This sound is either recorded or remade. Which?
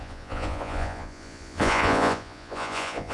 remade